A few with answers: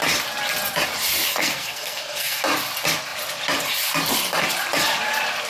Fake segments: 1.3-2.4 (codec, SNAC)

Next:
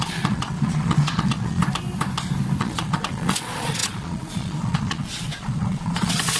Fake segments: 0.0-1.6 (vocoder, Vocos); 2.6-6.4

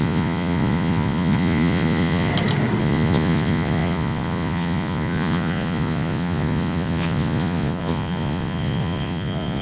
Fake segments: 0.0-2.3 (vocoder, Vocos); 2.8-9.6

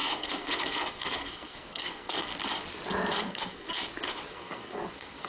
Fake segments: 0.0-2.3 (codec, SNAC); 3.2-3.8; 4.3-5.3

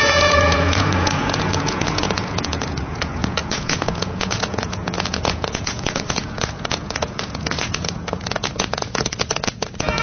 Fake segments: 0.0-10.0 (vocoder, Vocos)

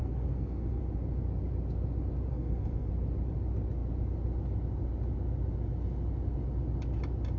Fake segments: 0.0-0.8 (codec, SNAC); 2.3-2.9